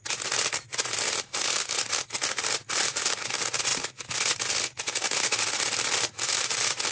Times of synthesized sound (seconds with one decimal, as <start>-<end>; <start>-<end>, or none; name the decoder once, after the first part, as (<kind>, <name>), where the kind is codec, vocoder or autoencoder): none